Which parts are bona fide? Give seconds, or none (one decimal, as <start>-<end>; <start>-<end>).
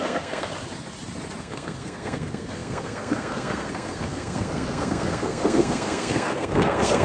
0.5-1.4